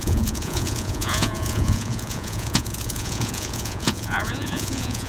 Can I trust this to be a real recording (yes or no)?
no